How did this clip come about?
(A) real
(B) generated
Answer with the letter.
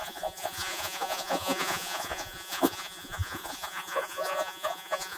B